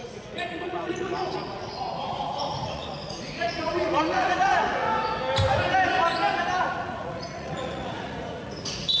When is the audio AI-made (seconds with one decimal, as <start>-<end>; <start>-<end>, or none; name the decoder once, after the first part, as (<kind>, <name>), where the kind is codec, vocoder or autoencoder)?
0.0-4.9 (vocoder, Vocos); 6.6-9.0

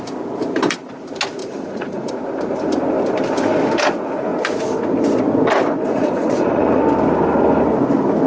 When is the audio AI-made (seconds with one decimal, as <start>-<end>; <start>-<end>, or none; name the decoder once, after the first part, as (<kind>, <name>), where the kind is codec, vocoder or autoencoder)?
1.4-2.1 (vocoder, Vocos); 5.9-6.8

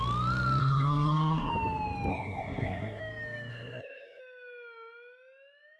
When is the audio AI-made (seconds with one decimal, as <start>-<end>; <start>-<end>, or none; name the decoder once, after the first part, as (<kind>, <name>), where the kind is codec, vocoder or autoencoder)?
0.6-1.5 (codec, SNAC); 2.1-3.0; 3.5-4.2

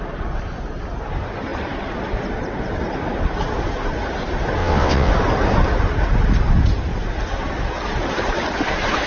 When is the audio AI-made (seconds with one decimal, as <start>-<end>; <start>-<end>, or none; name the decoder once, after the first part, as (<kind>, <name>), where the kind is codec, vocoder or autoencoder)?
4.6-5.1 (vocoder, WaveNeXt)